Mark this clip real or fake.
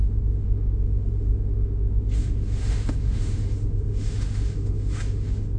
fake